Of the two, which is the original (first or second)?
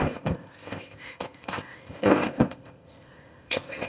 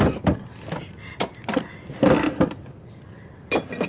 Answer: second